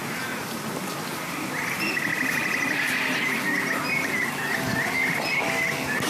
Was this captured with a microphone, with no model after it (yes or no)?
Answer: yes